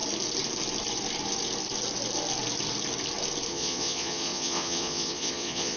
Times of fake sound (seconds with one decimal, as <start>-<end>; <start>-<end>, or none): 3.5-5.8